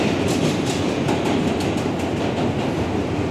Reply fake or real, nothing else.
real